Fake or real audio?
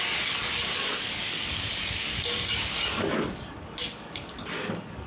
fake